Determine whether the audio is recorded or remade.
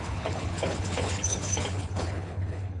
remade